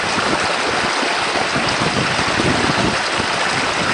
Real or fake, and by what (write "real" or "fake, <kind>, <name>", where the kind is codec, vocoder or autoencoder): real